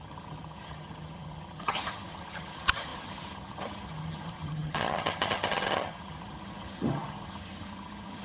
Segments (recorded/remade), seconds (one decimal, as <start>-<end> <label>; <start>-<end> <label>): 0.0-8.2 remade